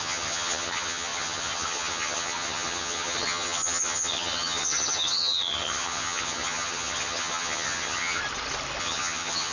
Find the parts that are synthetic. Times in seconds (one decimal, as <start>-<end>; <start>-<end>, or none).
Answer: 0.0-8.2; 8.8-9.5